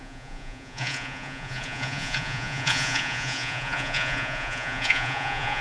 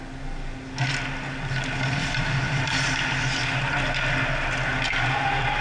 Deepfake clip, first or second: first